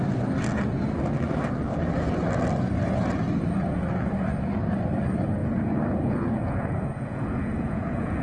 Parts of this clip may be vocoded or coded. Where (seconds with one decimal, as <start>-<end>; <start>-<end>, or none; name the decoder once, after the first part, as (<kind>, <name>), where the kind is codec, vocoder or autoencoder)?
5.4-8.2 (vocoder, Vocos)